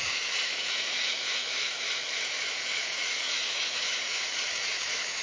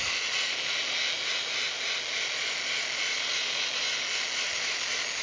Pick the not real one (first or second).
first